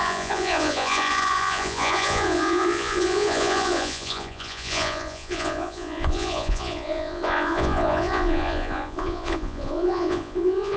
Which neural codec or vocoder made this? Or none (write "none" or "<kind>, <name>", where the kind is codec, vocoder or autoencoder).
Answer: vocoder, Vocos